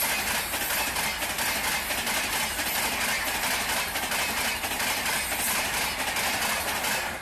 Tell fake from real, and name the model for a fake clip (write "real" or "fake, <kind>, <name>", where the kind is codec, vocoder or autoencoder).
real